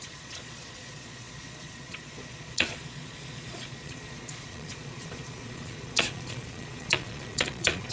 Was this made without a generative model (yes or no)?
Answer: no